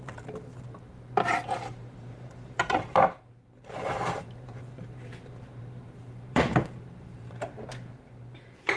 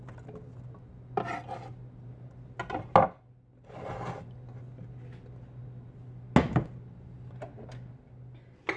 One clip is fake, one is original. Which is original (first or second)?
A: second